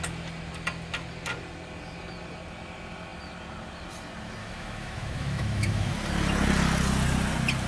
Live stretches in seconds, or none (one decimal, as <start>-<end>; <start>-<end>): 0.0-4.4; 5.9-7.7